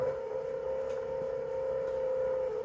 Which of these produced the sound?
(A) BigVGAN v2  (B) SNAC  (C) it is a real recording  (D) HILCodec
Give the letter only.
C